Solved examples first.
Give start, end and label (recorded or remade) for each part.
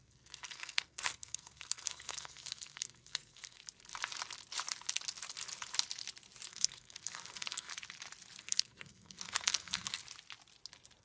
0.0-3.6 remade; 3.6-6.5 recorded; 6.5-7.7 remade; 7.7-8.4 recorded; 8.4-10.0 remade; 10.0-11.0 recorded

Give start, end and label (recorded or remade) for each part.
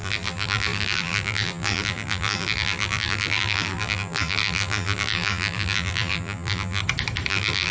0.0-6.8 remade; 6.8-7.3 recorded; 7.3-7.7 remade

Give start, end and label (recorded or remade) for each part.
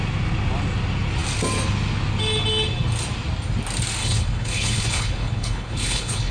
0.0-4.0 recorded; 4.0-6.3 remade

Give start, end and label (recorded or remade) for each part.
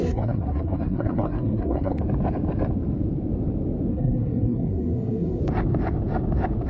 0.0-2.0 remade; 2.0-3.9 recorded; 3.9-5.4 remade; 5.4-6.7 recorded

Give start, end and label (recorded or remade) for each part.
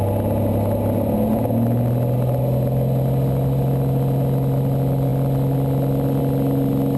0.0-7.0 recorded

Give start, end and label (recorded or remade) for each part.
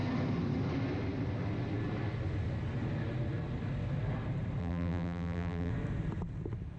0.0-4.6 recorded; 4.6-5.7 remade; 5.7-6.8 recorded